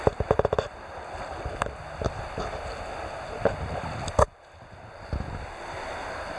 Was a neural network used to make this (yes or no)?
no